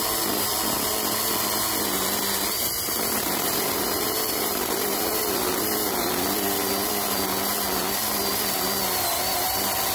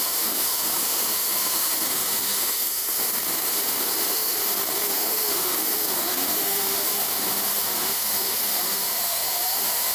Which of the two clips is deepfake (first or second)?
second